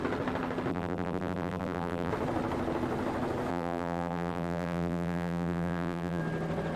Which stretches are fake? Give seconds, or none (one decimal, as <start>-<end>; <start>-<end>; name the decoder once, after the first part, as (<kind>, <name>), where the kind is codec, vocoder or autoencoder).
0.7-2.1 (vocoder, BigVGAN v2); 3.5-6.2